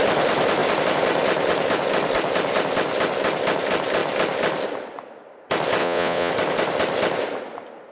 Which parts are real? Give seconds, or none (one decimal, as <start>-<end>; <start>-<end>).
0.0-5.8; 6.3-7.9